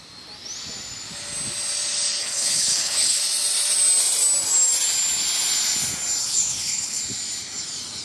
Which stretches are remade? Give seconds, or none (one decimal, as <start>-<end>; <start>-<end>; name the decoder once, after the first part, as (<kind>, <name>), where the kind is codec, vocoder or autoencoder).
2.2-3.2 (codec, HILCodec); 6.2-7.0